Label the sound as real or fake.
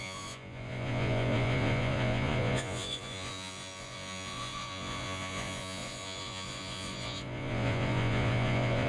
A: fake